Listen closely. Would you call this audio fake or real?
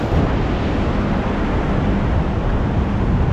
real